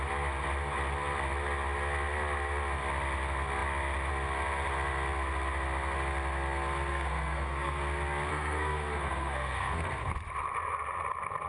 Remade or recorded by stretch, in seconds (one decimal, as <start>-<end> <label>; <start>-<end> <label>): 0.0-6.9 recorded; 6.9-7.8 remade; 7.8-8.3 recorded; 8.3-10.1 remade; 10.1-11.5 recorded